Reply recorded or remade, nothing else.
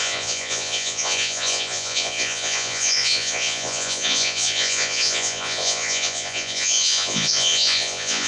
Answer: remade